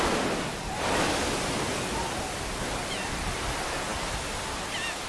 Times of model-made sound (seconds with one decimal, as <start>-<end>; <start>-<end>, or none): none